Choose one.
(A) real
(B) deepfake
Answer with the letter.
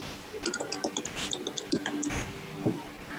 A